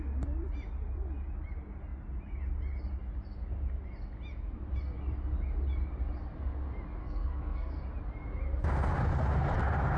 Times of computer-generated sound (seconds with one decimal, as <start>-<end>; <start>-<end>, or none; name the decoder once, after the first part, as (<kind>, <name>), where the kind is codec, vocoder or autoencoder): 7.0-7.8 (codec, SNAC)